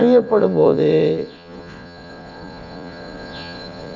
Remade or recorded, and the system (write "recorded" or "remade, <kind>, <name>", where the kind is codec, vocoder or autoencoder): remade, vocoder, Vocos